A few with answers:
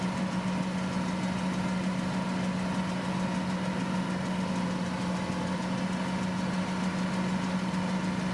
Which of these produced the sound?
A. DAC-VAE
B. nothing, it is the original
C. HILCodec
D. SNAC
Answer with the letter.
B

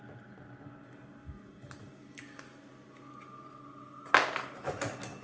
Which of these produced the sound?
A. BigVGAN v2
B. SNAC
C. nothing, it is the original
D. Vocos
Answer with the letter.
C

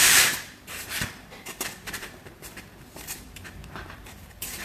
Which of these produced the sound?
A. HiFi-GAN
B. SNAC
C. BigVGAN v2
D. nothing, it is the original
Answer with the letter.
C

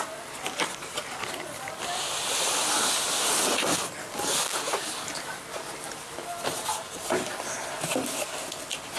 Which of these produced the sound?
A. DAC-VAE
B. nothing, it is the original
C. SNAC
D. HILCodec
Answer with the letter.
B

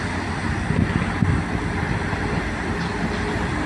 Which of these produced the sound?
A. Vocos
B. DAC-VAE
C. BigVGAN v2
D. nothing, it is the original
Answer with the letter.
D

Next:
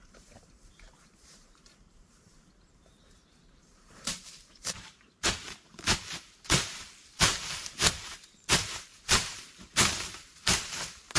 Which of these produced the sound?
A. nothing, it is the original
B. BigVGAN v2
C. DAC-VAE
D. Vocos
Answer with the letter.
B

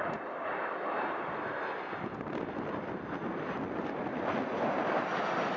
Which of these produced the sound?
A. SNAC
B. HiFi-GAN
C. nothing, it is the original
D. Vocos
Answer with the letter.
C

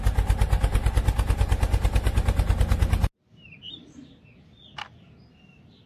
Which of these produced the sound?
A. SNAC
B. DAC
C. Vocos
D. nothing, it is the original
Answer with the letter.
D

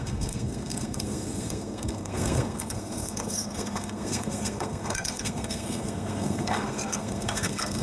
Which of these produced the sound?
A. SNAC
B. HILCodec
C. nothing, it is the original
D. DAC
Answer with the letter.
A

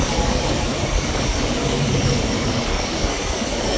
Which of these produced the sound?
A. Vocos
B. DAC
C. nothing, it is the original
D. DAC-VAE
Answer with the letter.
B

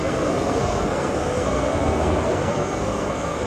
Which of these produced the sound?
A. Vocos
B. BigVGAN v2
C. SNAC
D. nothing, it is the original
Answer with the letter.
C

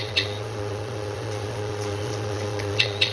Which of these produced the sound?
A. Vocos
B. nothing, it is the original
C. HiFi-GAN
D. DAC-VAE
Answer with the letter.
A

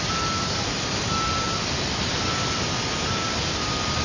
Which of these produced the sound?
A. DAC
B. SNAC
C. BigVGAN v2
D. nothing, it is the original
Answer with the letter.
D